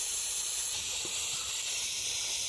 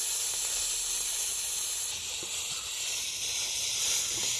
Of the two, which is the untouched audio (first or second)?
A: second